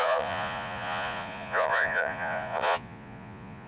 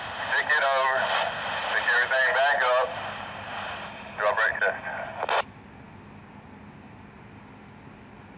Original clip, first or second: second